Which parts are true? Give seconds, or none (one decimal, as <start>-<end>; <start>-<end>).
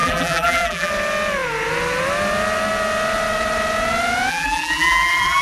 0.9-4.3